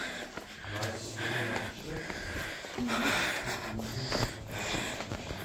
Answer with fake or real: real